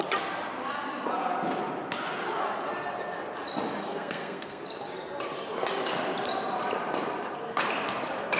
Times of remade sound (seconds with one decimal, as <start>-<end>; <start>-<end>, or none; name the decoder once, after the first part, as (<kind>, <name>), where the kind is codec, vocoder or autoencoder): 3.8-4.6 (codec, SNAC)